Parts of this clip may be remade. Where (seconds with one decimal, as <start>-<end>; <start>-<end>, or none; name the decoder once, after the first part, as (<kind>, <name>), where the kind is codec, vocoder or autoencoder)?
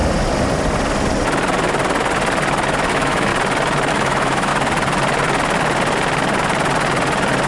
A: 2.9-3.3 (autoencoder, DAC-VAE); 3.9-4.5